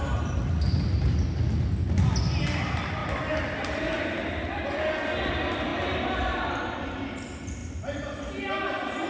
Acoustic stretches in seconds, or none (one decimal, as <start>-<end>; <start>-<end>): 0.0-9.1